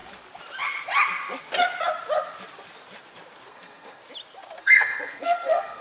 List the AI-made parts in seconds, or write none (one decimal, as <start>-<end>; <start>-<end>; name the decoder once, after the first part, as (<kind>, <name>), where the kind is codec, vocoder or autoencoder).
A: 3.5-4.0 (codec, SNAC); 4.6-5.8